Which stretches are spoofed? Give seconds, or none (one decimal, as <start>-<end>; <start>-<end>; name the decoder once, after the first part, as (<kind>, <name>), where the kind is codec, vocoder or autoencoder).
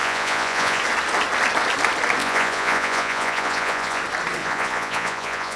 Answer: 0.0-0.8 (vocoder, Vocos); 2.2-4.0; 4.4-5.6